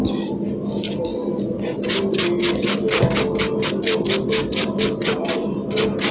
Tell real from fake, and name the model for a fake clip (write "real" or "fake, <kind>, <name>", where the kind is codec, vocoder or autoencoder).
real